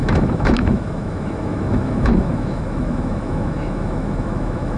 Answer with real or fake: fake